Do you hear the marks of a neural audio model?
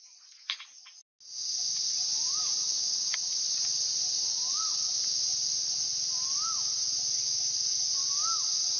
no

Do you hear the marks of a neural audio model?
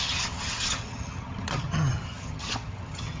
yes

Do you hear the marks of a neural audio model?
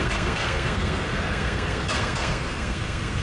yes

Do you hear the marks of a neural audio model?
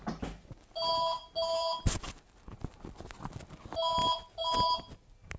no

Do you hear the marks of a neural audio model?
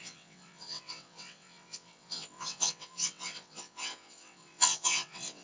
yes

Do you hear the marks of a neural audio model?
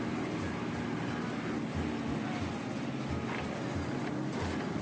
no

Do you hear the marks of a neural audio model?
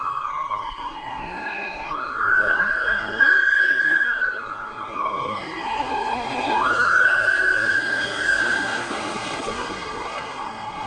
yes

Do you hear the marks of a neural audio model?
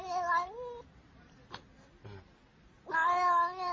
no